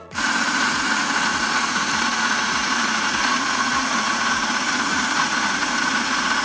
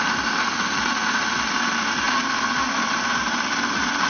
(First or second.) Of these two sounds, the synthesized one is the first